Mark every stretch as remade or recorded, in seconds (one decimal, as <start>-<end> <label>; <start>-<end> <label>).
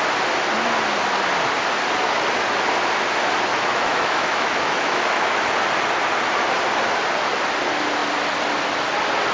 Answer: 0.0-3.5 recorded; 3.5-5.5 remade; 5.5-9.3 recorded